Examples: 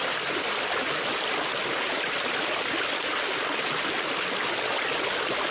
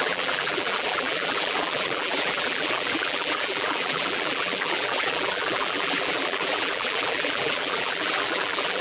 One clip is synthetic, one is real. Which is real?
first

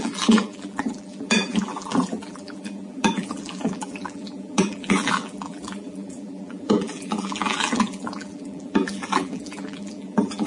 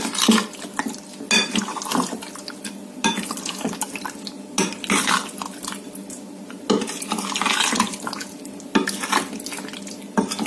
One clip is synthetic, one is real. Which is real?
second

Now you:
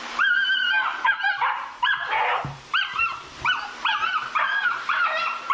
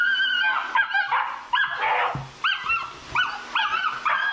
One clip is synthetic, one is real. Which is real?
second